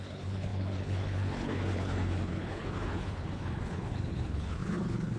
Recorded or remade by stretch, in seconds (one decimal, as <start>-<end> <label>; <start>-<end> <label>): 0.0-5.2 remade